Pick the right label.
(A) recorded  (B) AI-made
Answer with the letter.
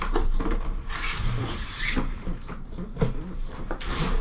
A